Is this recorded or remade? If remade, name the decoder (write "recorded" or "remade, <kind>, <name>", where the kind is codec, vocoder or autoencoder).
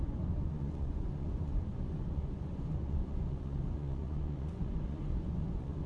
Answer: remade, vocoder, Vocos